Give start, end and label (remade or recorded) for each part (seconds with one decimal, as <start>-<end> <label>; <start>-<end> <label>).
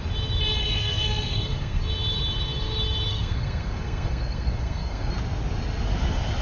0.0-0.6 recorded; 0.6-1.8 remade; 1.8-3.1 recorded; 3.1-5.1 remade; 5.1-6.4 recorded